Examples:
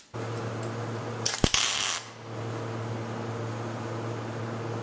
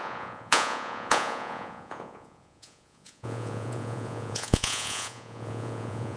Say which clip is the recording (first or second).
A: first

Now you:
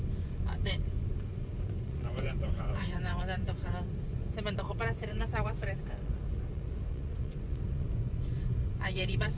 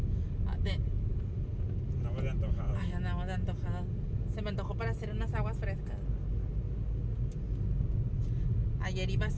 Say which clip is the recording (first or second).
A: second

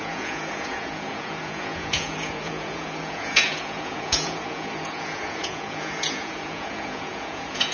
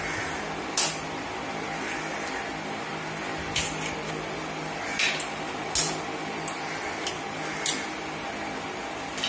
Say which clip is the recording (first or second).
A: second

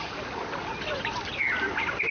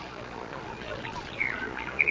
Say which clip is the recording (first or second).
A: first